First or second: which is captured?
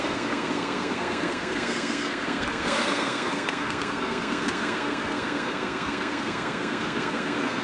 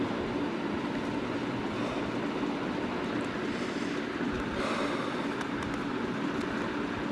second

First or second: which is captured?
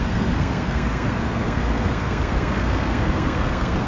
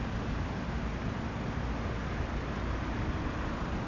second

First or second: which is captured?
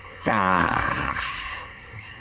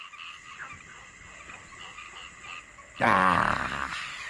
second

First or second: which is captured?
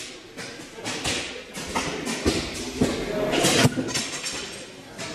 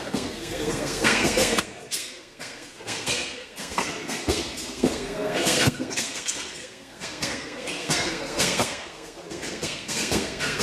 first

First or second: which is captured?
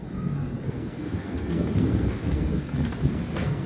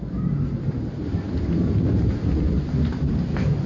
second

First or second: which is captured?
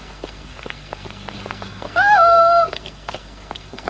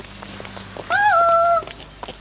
second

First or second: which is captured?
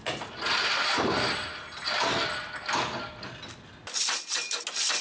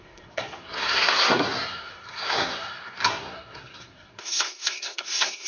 first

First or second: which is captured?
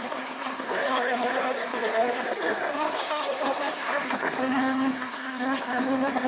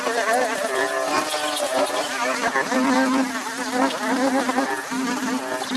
second